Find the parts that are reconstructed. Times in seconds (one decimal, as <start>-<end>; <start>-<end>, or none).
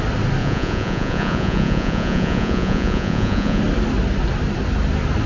0.4-3.6